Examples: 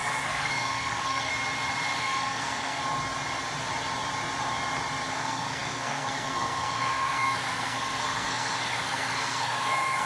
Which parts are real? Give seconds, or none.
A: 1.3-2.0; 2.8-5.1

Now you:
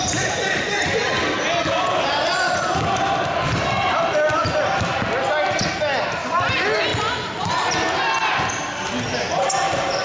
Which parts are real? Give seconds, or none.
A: 0.0-10.0

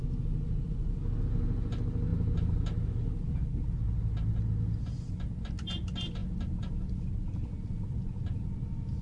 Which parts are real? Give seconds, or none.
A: 0.0-9.0